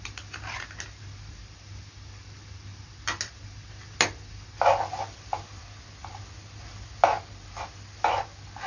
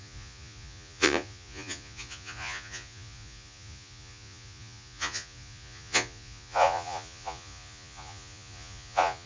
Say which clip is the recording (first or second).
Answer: first